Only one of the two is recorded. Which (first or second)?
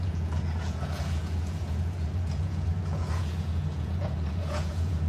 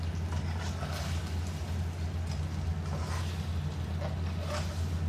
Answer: second